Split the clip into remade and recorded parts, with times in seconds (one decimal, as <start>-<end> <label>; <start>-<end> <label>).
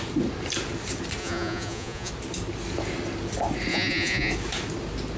0.0-1.2 recorded; 1.2-2.1 remade; 2.1-3.7 recorded; 3.7-4.3 remade; 4.3-5.2 recorded